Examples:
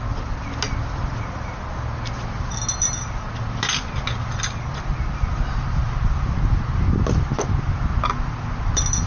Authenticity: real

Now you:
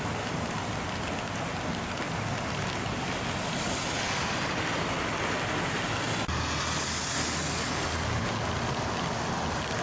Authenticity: real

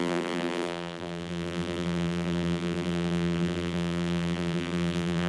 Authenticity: fake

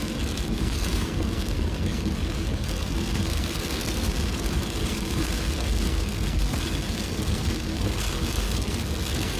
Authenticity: fake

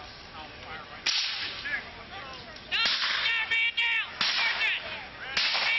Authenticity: real